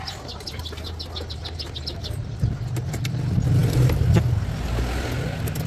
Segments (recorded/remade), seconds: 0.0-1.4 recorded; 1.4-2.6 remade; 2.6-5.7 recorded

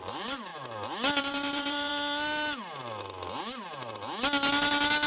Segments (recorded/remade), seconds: 0.0-0.5 remade; 0.5-1.2 recorded; 1.2-1.9 remade; 1.9-5.1 recorded

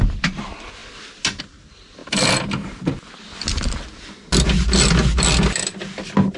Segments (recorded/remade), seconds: 0.0-6.4 recorded